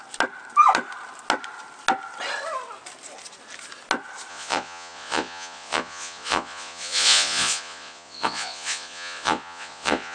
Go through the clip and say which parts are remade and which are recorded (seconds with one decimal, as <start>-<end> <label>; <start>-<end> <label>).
0.0-4.3 recorded; 4.3-10.1 remade